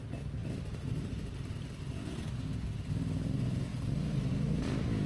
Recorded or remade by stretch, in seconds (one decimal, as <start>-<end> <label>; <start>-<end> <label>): 0.0-0.4 recorded; 0.4-2.4 remade; 2.4-3.7 recorded; 3.7-4.3 remade; 4.3-5.1 recorded